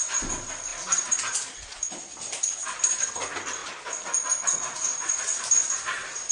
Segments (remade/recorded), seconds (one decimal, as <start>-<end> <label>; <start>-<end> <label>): 0.0-6.3 recorded